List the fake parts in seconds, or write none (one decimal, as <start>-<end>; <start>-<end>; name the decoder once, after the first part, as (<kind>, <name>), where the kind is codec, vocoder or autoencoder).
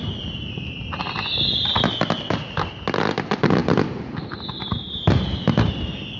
none